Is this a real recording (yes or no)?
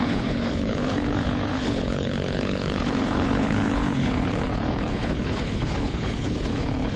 no